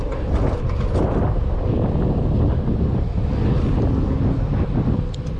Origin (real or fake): real